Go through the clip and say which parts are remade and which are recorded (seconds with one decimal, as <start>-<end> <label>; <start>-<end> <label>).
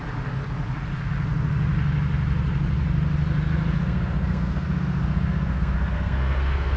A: 0.0-3.8 recorded; 3.8-6.8 remade